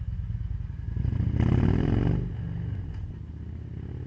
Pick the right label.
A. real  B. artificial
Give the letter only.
A